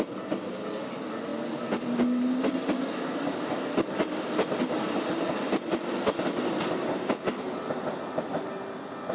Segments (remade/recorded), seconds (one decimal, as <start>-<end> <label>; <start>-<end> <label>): 0.0-9.1 recorded